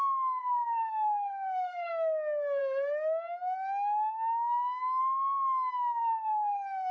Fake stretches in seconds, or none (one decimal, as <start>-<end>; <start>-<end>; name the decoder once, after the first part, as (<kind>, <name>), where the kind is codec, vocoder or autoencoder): 0.4-1.9 (codec, SNAC); 6.0-6.9